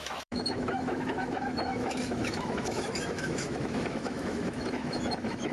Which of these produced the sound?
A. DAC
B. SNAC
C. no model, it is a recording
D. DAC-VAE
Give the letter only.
D